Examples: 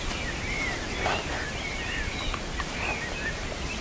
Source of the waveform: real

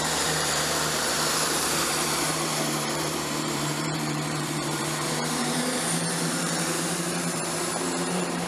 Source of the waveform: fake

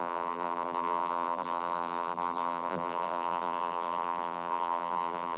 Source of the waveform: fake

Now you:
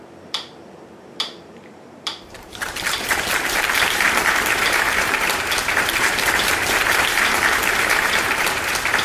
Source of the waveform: fake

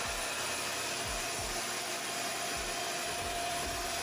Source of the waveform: fake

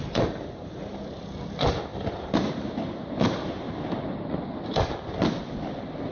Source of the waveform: real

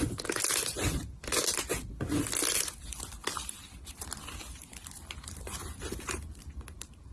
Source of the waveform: fake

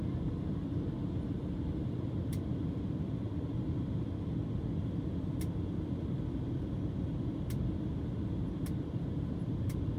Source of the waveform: fake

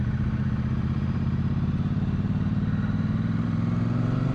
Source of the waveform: fake